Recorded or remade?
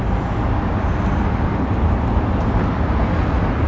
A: recorded